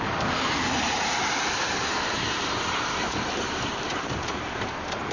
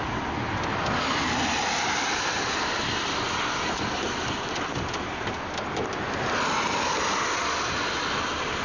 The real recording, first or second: second